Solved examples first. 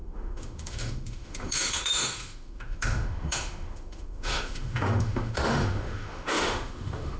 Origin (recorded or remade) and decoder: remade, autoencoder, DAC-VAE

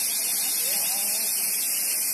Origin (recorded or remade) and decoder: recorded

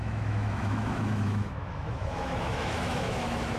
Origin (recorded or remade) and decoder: remade, autoencoder, DAC-VAE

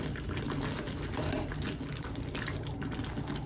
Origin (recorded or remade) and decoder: recorded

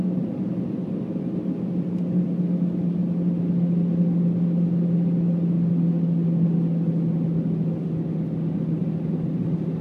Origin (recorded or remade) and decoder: recorded